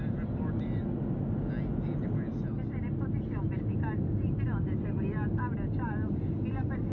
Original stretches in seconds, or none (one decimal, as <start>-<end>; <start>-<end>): 0.0-6.9

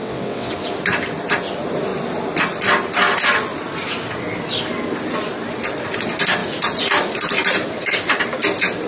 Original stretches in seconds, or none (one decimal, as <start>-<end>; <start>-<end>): 0.5-8.9

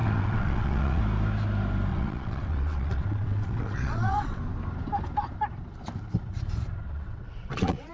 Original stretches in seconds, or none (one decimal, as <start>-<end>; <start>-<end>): 1.0-1.9; 4.4-6.8

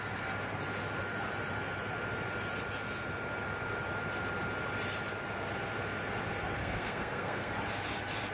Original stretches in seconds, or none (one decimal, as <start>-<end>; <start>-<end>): 0.0-6.6; 7.5-8.3

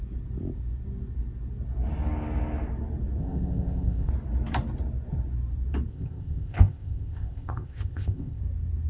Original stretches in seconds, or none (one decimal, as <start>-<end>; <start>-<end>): 0.0-3.2; 4.1-5.9; 8.4-8.9

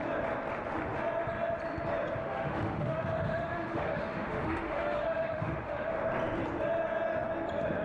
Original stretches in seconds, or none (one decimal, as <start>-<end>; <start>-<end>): 0.0-2.2; 6.0-7.8